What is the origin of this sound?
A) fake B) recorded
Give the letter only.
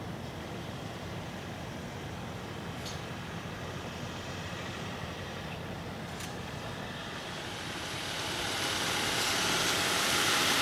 A